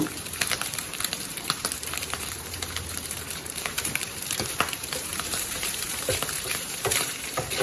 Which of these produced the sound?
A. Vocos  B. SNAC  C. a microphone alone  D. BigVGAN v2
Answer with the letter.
D